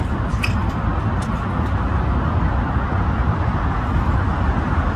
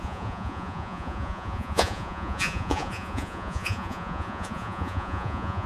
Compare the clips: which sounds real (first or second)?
first